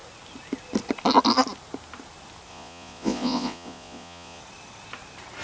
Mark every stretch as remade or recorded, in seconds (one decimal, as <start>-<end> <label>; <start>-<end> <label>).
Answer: 0.0-2.5 recorded; 2.5-4.4 remade; 4.4-5.4 recorded